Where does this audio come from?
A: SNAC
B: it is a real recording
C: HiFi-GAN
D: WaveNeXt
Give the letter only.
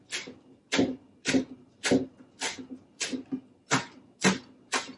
B